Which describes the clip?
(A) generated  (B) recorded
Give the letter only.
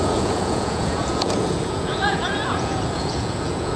A